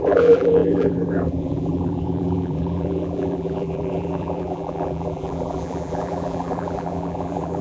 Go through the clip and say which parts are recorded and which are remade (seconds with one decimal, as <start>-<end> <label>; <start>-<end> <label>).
0.0-7.6 remade